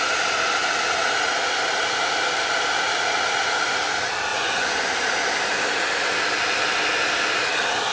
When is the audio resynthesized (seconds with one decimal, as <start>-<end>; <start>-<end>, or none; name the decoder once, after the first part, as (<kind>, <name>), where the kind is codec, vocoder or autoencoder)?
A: 4.3-4.9 (vocoder, Vocos)